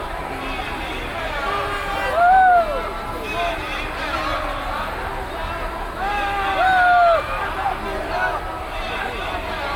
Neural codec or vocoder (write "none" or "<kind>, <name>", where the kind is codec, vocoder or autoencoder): none